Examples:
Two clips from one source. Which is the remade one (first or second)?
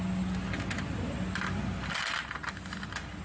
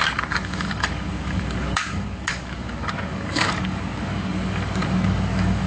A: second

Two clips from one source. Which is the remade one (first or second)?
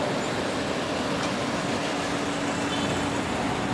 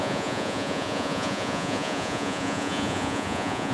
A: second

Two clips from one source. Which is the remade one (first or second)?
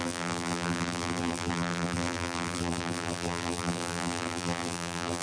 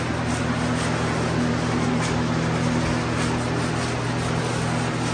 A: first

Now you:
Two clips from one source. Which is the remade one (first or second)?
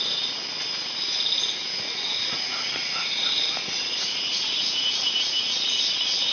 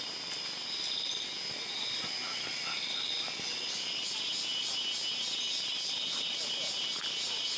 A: first